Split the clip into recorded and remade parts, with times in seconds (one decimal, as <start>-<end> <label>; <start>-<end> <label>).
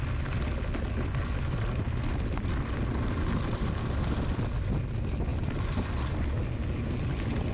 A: 0.0-7.5 recorded